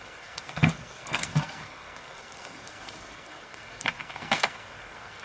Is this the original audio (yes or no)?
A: no